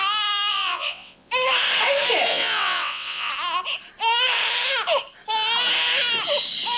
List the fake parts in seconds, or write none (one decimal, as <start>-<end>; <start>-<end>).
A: 0.5-1.3; 2.3-3.3